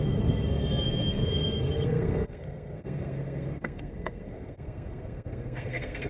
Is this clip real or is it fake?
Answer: fake